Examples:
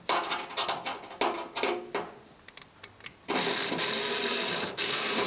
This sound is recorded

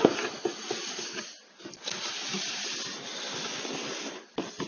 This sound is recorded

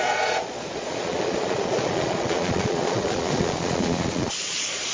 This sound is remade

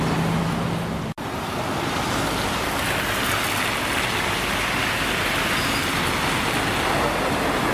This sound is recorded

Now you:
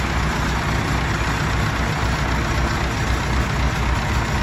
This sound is recorded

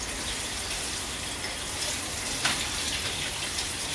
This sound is recorded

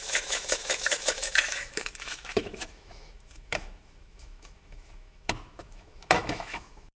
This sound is remade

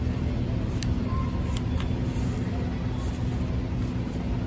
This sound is recorded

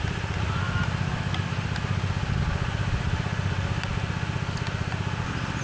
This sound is recorded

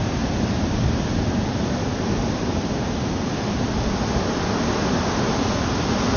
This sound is recorded